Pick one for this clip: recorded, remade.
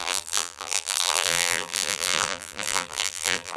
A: remade